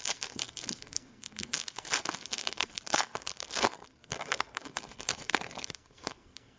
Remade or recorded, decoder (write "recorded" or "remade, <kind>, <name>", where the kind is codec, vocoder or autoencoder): remade, codec, SNAC